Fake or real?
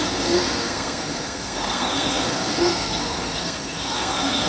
fake